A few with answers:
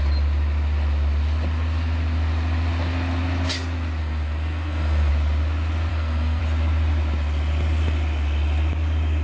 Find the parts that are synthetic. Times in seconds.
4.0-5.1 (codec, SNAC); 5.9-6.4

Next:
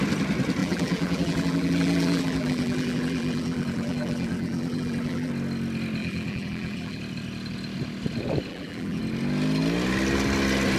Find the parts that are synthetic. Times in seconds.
0.6-5.3 (vocoder, BigVGAN v2); 6.0-7.0; 8.5-9.0

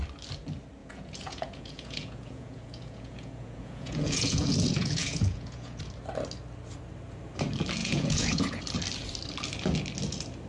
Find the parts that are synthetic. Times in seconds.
0.8-5.8 (vocoder, Vocos); 7.8-8.6

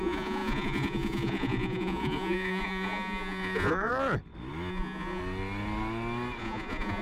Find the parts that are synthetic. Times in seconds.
0.0-3.9 (vocoder, Vocos); 4.7-5.2; 6.4-7.0

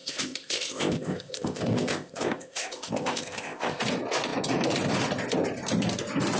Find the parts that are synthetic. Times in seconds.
0.0-3.8 (codec, ZipCodec)

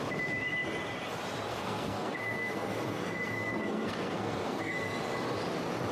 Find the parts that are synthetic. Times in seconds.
1.5-5.0 (codec, SNAC)